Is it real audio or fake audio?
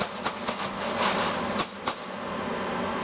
real